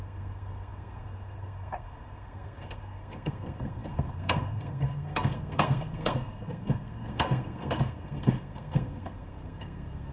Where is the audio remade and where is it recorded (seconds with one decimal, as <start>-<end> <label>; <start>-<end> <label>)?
0.0-10.1 remade